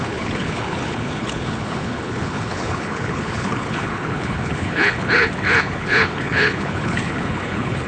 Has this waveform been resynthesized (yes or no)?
yes